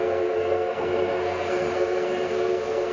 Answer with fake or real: fake